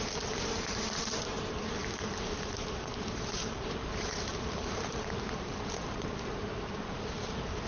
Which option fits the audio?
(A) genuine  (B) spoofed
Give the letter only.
B